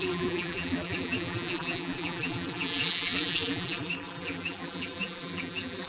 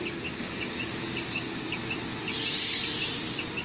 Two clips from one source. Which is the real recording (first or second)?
second